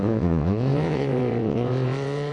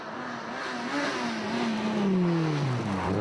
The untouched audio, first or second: second